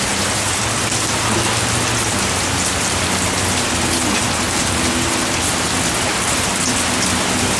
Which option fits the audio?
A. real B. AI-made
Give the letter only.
A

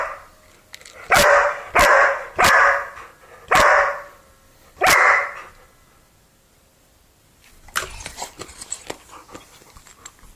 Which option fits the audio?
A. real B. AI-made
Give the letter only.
A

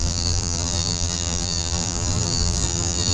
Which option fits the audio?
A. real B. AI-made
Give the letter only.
B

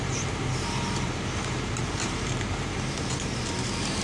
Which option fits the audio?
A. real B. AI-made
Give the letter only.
B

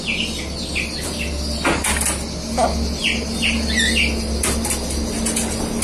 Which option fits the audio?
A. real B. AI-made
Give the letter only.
A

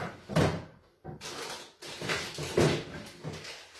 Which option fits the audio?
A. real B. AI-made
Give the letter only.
A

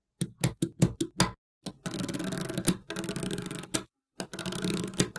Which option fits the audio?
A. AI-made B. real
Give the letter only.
B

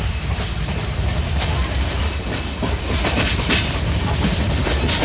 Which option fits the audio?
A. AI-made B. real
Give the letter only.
A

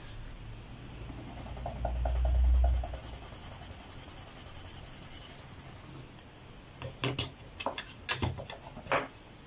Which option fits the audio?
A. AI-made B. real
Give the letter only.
B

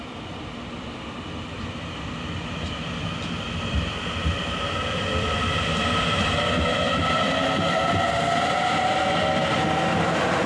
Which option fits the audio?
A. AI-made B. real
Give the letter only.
A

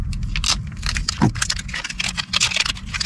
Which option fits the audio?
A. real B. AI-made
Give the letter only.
A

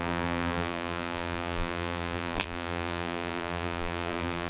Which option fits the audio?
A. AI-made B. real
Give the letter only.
A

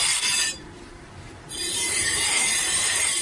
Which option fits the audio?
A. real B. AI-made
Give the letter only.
B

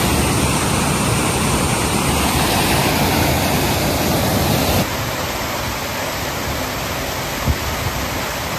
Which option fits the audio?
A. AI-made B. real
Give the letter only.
B